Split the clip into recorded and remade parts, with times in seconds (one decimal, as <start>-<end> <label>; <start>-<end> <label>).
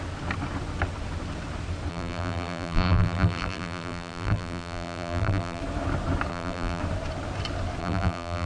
0.0-1.9 recorded; 1.9-5.6 remade; 5.6-6.3 recorded; 6.3-6.8 remade; 6.8-7.8 recorded; 7.8-8.5 remade